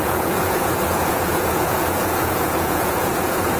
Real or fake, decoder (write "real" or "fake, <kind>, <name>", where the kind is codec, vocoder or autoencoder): fake, vocoder, Vocos